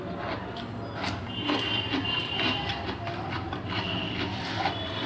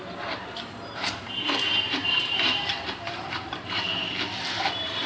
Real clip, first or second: first